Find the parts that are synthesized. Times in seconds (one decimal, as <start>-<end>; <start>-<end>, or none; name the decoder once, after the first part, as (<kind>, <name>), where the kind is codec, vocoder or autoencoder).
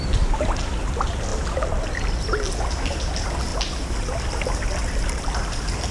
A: none